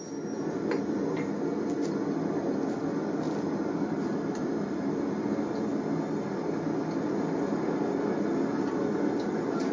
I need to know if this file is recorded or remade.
recorded